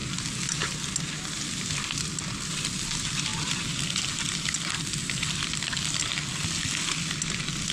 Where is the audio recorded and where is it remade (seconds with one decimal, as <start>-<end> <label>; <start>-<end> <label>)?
0.0-7.7 recorded